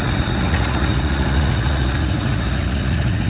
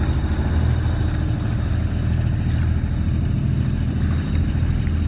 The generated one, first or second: first